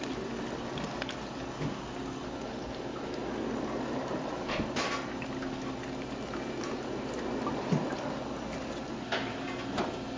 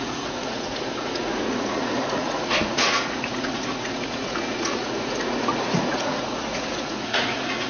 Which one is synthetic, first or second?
second